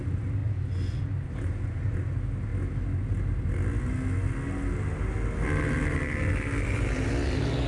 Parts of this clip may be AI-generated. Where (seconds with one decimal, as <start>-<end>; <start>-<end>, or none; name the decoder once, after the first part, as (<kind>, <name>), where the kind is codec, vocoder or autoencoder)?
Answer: none